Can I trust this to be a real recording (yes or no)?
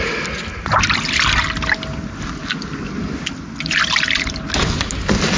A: yes